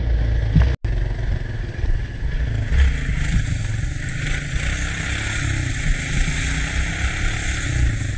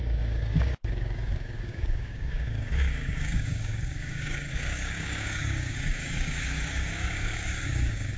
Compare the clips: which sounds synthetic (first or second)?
second